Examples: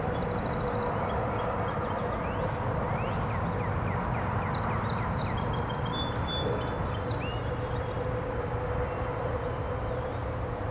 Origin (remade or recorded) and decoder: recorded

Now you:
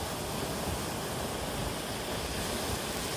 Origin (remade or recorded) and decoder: recorded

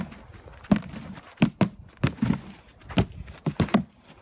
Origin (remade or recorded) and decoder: recorded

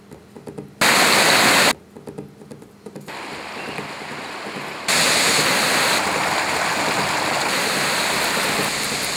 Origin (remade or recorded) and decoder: recorded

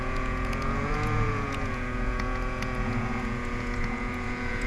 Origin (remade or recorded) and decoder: remade, vocoder, Vocos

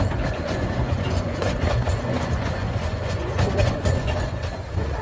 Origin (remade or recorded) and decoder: remade, vocoder, Vocos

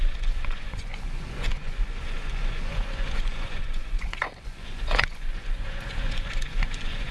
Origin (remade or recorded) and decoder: remade, vocoder, Vocos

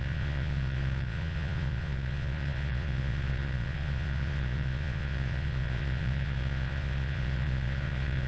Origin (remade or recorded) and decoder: remade, vocoder, Vocos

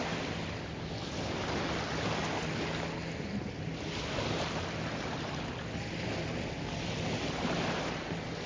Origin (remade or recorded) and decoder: recorded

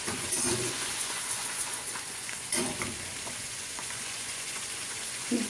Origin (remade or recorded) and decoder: remade, vocoder, Vocos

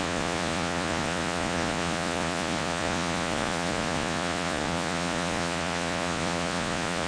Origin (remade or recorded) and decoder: remade, vocoder, Vocos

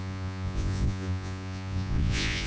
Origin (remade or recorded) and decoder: remade, vocoder, Vocos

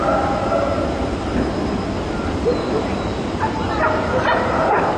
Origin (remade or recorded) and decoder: recorded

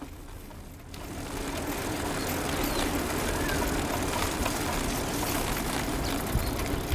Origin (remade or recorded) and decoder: recorded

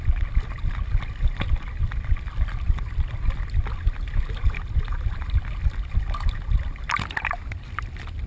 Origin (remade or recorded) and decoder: recorded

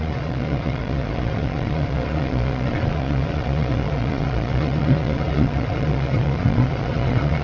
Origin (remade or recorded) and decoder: remade, vocoder, Vocos